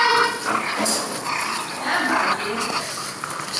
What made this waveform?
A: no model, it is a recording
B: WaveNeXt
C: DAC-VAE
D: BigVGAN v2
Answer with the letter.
A